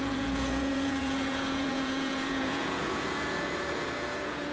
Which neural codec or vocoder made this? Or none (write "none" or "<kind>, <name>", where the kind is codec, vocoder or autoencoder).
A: vocoder, Vocos